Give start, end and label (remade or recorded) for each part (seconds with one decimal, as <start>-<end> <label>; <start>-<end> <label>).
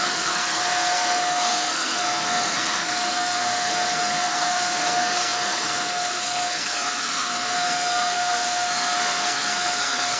0.0-10.2 remade